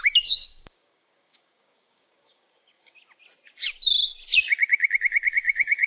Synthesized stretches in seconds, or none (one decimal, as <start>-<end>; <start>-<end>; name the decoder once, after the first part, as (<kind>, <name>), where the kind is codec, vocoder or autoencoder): 0.0-3.0 (codec, DAC); 5.3-5.9